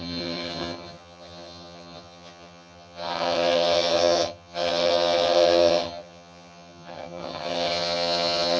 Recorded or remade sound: remade